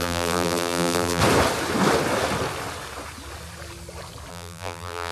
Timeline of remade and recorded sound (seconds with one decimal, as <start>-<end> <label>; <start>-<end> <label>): 0.0-1.2 remade; 1.2-4.3 recorded; 4.3-5.1 remade